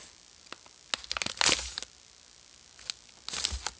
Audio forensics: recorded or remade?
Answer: recorded